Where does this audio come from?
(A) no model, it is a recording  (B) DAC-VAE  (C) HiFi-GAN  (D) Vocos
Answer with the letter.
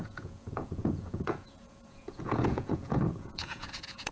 D